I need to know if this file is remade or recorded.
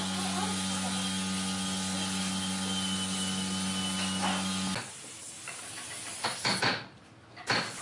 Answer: recorded